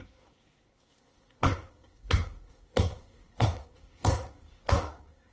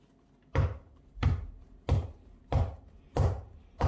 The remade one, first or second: first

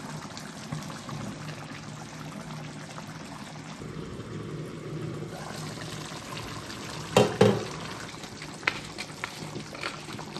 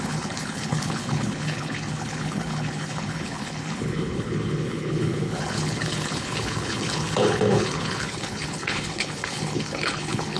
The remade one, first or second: second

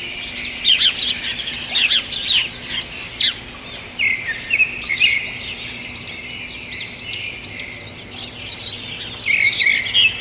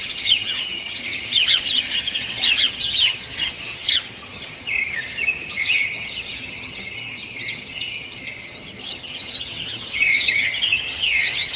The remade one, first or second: second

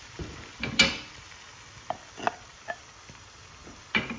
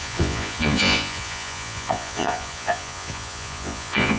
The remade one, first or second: second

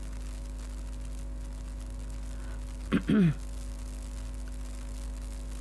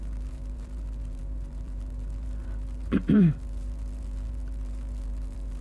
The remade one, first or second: second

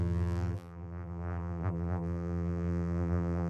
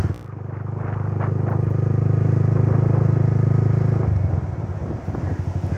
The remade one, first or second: first